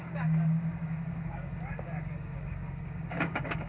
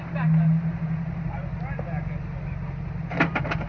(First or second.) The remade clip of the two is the first